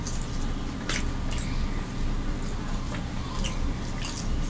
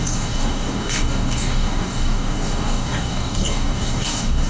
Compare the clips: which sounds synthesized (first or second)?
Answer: second